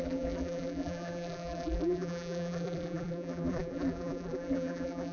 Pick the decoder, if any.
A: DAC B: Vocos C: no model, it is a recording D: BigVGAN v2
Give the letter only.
D